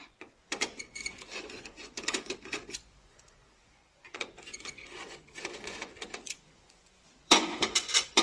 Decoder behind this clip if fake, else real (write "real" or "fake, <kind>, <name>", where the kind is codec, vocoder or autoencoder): fake, vocoder, Vocos